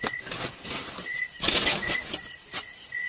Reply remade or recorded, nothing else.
recorded